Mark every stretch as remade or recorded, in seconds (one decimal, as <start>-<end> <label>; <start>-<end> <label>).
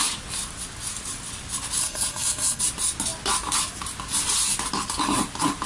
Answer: 0.0-1.8 recorded; 1.8-2.6 remade; 2.6-5.7 recorded